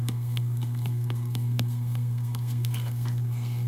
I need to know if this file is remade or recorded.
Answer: remade